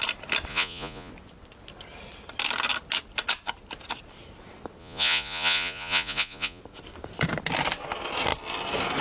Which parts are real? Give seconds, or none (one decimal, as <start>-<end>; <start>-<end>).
0.0-0.5; 1.1-4.8; 6.6-9.0